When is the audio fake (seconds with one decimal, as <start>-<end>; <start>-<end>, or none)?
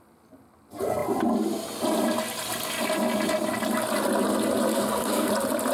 4.7-5.3